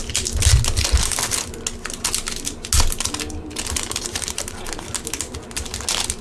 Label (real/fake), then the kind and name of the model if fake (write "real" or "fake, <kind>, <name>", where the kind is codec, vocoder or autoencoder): real